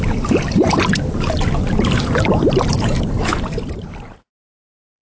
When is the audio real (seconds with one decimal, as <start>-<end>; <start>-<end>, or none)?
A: none